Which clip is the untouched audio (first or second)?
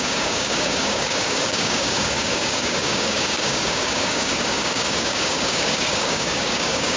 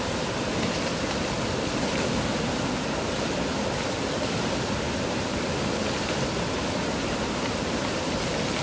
second